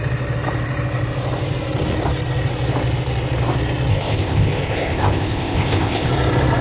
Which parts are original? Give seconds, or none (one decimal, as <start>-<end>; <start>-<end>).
0.0-3.9; 6.1-6.6